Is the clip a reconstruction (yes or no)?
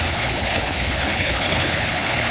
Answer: yes